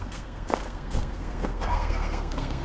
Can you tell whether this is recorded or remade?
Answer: remade